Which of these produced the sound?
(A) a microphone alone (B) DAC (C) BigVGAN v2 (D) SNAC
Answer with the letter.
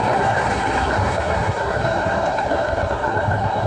D